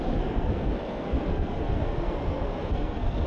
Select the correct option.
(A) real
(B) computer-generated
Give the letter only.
B